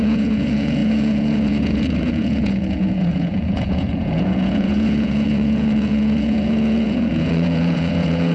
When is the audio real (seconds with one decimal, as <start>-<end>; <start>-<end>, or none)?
none